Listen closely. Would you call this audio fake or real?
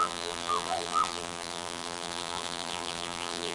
fake